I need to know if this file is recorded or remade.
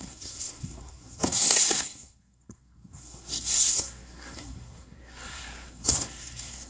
remade